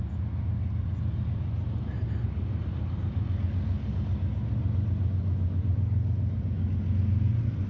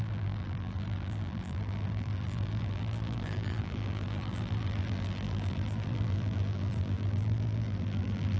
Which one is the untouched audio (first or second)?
first